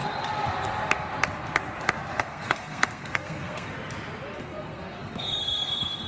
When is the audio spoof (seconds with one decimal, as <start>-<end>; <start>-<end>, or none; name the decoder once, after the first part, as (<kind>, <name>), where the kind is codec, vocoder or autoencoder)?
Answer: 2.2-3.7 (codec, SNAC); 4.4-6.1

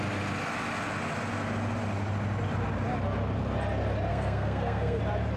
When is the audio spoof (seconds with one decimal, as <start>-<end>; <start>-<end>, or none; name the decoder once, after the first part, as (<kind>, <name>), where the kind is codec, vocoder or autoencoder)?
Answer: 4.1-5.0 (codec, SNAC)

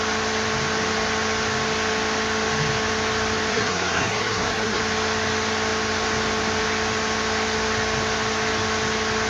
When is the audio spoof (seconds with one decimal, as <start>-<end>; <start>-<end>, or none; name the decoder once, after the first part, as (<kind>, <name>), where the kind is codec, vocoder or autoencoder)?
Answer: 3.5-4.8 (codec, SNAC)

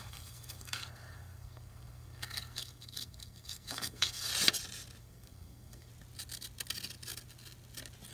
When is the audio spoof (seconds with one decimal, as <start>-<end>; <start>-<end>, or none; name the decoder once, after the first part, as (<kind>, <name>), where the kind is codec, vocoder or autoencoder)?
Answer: 0.0-4.3 (codec, SNAC); 5.0-5.9

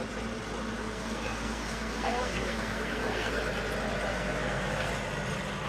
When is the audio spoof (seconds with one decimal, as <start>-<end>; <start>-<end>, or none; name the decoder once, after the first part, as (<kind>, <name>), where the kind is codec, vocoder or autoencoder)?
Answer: 0.8-3.4 (codec, SNAC); 4.1-4.9

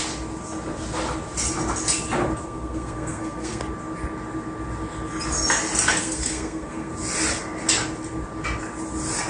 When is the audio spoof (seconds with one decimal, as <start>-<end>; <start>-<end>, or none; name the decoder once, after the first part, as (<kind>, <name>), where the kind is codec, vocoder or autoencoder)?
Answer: 2.4-3.6 (codec, SNAC); 6.0-6.9

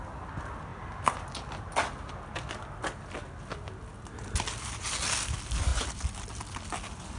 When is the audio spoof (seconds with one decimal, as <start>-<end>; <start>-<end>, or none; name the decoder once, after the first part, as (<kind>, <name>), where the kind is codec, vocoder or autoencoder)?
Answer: none

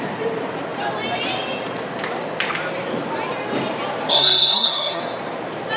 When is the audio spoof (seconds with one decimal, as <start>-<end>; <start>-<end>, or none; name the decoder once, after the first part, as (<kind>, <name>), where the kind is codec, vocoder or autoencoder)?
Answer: 4.1-5.0 (codec, SNAC)